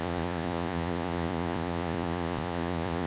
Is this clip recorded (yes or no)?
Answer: no